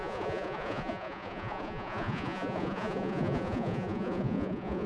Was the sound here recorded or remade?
remade